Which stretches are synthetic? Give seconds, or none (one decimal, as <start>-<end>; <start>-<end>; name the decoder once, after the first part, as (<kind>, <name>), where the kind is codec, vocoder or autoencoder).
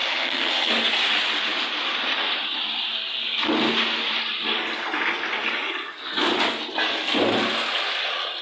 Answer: 0.0-0.7 (vocoder, HiFi-GAN)